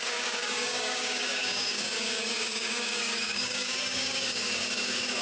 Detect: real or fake fake